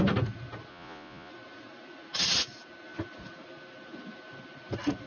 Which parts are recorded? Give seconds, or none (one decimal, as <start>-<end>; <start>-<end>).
0.0-0.7; 1.3-5.1